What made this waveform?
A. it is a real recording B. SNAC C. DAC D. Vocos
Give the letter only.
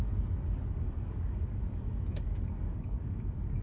C